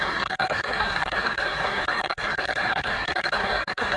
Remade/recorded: remade